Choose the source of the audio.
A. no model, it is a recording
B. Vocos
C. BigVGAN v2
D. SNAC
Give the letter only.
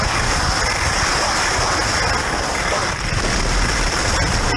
A